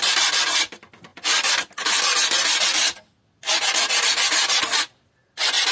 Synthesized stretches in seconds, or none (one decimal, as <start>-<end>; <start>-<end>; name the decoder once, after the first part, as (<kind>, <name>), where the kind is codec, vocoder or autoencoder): 1.1-2.0 (vocoder, BigVGAN v2)